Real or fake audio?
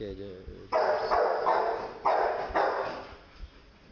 real